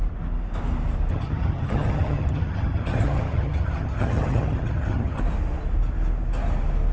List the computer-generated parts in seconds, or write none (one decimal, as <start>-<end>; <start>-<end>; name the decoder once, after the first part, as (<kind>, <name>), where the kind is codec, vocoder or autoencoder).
1.1-5.2 (vocoder, HiFi-GAN)